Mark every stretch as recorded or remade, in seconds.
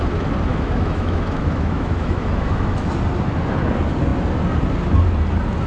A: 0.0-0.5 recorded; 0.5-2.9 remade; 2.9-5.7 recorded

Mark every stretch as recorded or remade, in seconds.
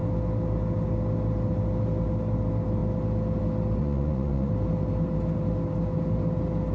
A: 0.0-3.8 recorded; 3.8-4.5 remade; 4.5-6.7 recorded